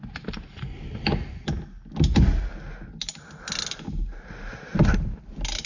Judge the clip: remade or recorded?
recorded